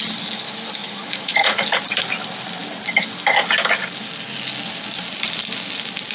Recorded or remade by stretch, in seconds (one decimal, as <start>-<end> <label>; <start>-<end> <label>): 0.0-0.8 recorded; 0.8-1.6 remade; 1.6-6.1 recorded